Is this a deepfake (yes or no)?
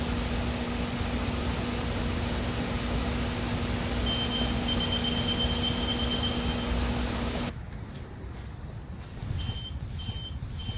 no